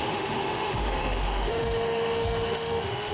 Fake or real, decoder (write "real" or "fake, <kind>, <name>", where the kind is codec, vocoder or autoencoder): fake, autoencoder, DAC-VAE